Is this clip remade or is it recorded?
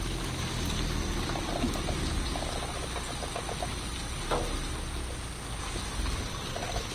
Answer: recorded